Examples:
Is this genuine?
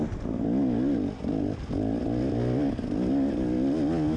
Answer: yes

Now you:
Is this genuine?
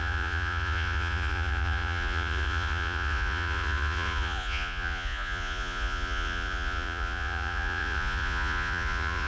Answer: no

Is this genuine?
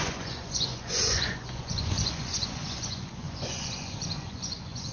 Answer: no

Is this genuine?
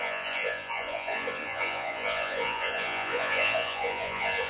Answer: no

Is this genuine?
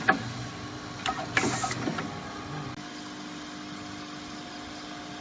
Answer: yes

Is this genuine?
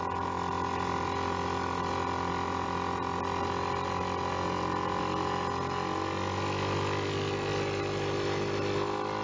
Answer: yes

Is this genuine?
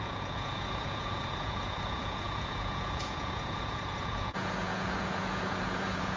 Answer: no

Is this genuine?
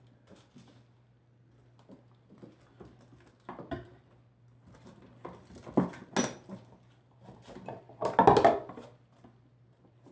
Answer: yes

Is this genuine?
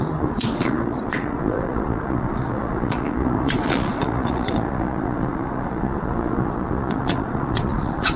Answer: no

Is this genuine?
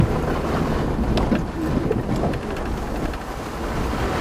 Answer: yes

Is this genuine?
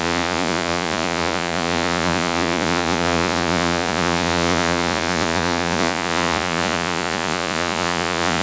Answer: no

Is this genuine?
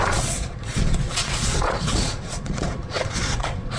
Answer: no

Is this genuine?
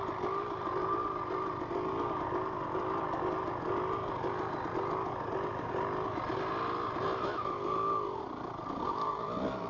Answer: yes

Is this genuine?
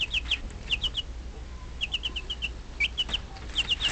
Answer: yes